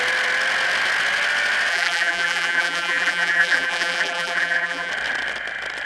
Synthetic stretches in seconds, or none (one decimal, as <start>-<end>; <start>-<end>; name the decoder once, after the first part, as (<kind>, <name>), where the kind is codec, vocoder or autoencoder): 1.7-4.9 (vocoder, BigVGAN v2)